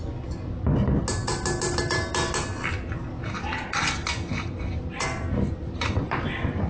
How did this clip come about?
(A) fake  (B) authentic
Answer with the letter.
B